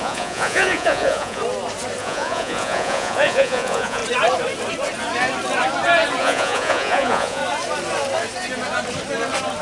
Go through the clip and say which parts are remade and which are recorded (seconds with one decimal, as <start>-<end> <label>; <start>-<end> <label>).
0.0-1.4 remade; 1.4-2.0 recorded; 2.0-4.0 remade; 4.0-6.2 recorded; 6.2-7.4 remade; 7.4-9.6 recorded